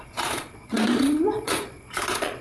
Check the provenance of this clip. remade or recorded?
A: remade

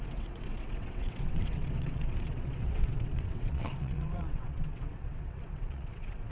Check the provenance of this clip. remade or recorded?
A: remade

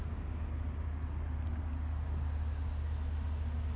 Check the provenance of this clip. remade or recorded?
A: recorded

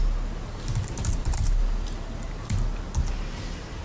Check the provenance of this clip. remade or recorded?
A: recorded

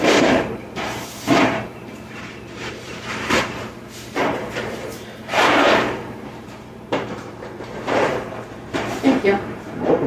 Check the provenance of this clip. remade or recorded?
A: remade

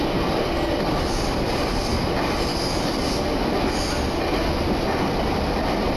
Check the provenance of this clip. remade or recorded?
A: recorded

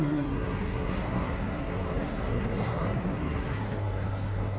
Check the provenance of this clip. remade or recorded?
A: remade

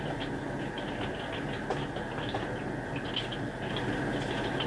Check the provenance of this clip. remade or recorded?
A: recorded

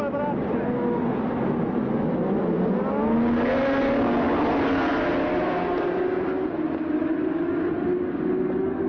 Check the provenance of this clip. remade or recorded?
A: recorded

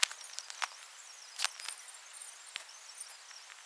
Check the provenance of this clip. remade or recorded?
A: recorded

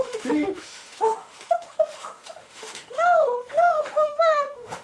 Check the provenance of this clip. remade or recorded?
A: remade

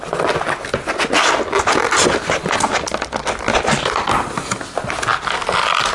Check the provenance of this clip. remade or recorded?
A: recorded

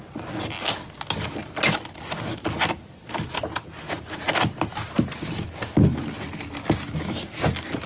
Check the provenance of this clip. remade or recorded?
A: recorded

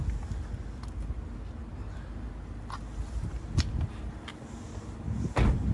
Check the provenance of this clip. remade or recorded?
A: recorded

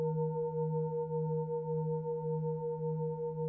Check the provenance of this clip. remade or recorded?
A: recorded